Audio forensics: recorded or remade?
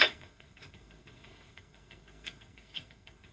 remade